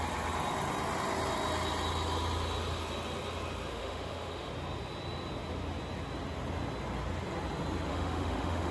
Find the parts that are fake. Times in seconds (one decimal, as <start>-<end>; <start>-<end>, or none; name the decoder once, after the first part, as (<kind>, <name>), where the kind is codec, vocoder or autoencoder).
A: 3.7-4.5 (autoencoder, DAC-VAE); 7.9-8.7